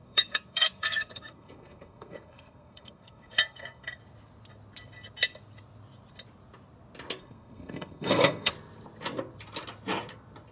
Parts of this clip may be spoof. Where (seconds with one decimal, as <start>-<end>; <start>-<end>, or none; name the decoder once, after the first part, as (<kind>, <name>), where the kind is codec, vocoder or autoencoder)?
0.0-4.0 (codec, SNAC); 7.2-8.5